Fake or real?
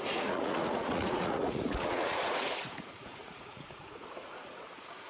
fake